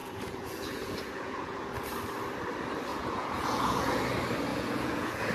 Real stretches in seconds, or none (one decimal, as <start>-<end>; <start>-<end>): 1.6-2.9; 4.0-4.5